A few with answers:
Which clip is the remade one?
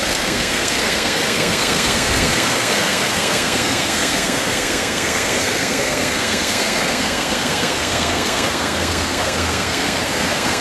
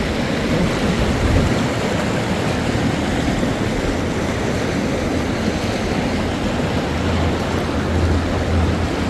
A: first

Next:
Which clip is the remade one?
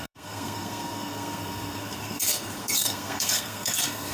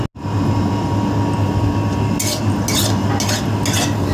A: first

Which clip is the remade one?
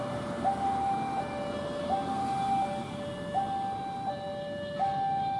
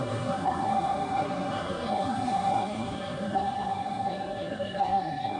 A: second